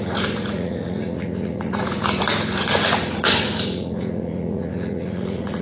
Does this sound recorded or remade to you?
remade